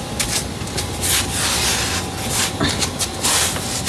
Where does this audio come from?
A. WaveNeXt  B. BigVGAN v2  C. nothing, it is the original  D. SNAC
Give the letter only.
C